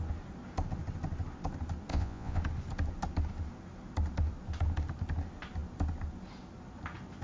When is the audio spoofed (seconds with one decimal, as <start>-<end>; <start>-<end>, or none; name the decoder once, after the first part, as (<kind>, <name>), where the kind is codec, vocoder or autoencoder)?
1.9-2.4 (vocoder, Vocos)